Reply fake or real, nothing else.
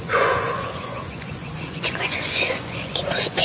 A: fake